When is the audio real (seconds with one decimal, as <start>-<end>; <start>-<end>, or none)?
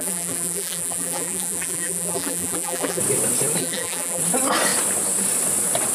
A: 3.0-3.6; 4.2-5.9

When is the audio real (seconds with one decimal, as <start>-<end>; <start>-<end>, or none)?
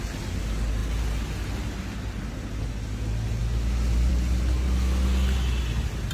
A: 0.0-6.1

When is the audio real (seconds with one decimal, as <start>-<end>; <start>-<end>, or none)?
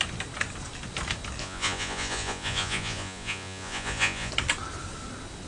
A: 0.0-1.4; 4.3-5.5